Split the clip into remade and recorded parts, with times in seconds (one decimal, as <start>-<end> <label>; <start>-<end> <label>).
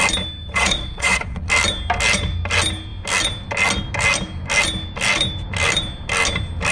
0.0-0.4 recorded; 0.4-1.5 remade; 1.5-6.7 recorded